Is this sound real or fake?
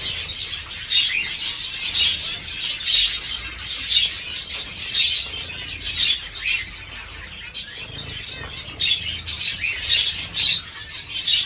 real